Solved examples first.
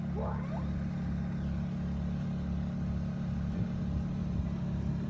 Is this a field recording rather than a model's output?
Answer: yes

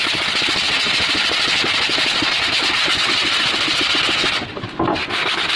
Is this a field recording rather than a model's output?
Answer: yes